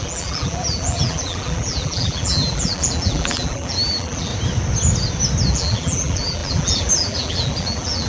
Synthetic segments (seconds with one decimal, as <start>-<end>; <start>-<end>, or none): 0.0-4.3; 5.5-8.1